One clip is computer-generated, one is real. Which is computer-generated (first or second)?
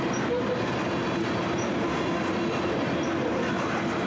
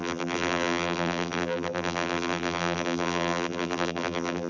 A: second